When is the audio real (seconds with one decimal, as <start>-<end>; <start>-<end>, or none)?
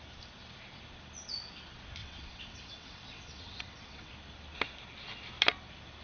0.0-2.0; 4.1-6.0